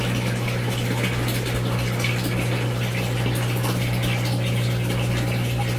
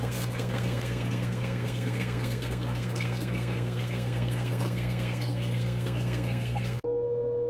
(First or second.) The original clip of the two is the first